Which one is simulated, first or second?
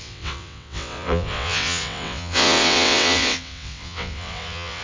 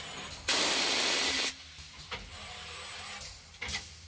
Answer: first